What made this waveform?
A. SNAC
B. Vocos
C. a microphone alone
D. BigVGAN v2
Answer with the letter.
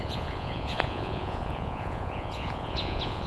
B